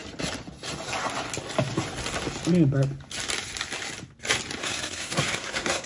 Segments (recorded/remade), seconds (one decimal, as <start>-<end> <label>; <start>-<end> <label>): 0.0-4.6 recorded; 4.6-5.9 remade